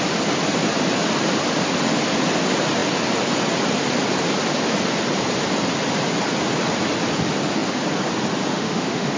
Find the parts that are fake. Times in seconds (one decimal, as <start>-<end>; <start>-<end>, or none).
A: 8.5-9.2